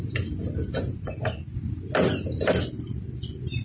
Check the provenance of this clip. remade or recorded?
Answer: recorded